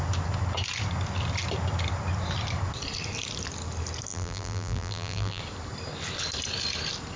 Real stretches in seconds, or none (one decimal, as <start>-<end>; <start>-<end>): 0.0-4.1; 5.4-7.2